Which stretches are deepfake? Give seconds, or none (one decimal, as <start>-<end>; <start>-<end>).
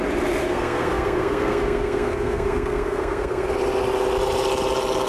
0.4-3.5